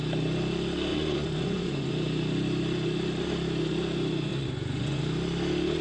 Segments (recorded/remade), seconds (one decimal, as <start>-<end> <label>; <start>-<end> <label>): 0.0-0.9 recorded; 0.9-1.9 remade; 1.9-4.3 recorded; 4.3-5.0 remade; 5.0-5.8 recorded